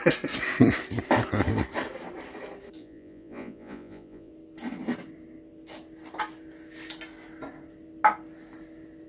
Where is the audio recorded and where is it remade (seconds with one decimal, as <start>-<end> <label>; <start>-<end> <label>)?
0.0-2.8 recorded; 2.8-4.3 remade; 4.3-9.1 recorded